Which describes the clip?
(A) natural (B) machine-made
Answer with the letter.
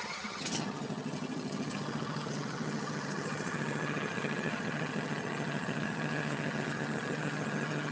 B